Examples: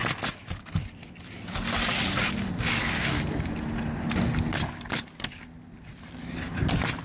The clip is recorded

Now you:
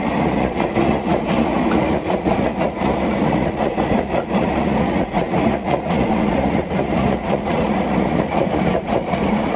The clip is remade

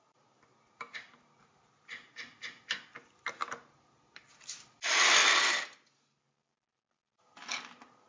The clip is recorded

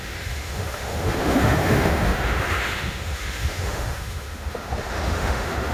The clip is remade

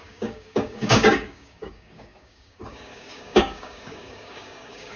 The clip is remade